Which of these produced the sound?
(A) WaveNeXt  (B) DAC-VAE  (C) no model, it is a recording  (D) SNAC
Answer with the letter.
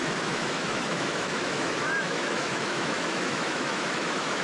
B